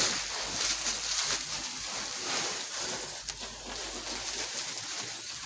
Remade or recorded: recorded